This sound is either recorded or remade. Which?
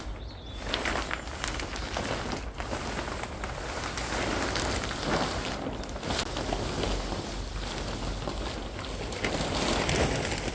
recorded